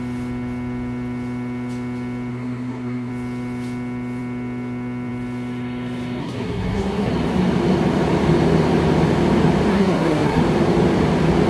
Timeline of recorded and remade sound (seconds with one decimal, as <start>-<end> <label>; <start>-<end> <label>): 0.0-2.3 recorded; 2.3-3.1 remade; 3.1-6.2 recorded; 6.2-7.1 remade; 7.1-9.7 recorded; 9.7-10.4 remade; 10.4-11.5 recorded